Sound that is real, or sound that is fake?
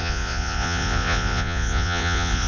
fake